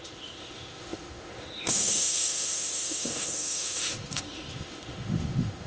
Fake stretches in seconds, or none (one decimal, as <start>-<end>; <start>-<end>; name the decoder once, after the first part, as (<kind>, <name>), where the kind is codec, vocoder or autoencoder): 0.0-5.7 (autoencoder, DAC-VAE)

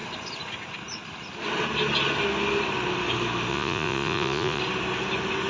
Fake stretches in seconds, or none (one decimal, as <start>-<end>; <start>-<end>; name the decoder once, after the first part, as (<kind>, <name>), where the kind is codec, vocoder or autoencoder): 3.5-4.6 (vocoder, Vocos)

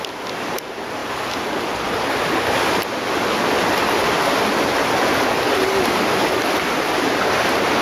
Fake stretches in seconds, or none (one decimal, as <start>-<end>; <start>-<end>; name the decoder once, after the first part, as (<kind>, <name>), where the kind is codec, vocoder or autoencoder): none

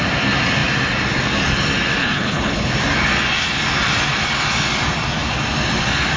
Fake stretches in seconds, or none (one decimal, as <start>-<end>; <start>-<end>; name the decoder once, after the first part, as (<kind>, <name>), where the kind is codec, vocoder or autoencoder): 2.0-2.7 (codec, HILCodec)